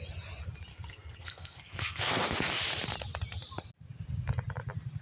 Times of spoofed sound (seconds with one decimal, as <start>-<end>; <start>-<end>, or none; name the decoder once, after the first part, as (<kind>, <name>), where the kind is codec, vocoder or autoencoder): 0.7-2.2 (codec, SNAC)